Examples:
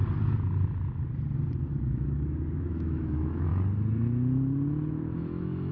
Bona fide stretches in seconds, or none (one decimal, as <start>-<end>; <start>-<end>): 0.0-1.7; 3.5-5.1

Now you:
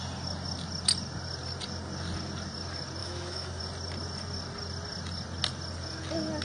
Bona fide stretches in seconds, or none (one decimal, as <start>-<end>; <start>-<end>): 0.0-3.0; 3.6-6.4

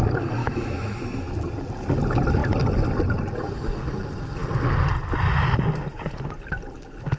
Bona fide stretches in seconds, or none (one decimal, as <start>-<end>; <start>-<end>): 0.0-0.4; 1.0-7.2

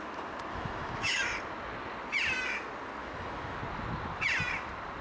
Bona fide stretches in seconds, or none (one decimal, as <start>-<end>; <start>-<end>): 0.0-0.5; 1.2-3.0; 3.6-5.0

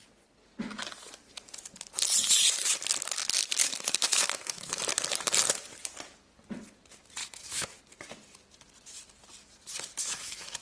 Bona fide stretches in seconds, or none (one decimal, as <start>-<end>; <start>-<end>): 0.0-3.6; 4.8-7.2; 7.8-10.0